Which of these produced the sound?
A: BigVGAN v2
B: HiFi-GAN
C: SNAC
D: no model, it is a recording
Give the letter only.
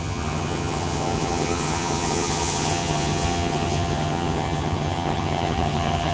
B